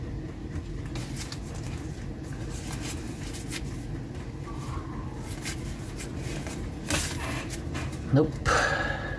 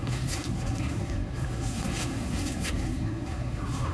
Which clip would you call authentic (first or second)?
first